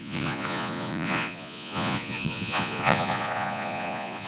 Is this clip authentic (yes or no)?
no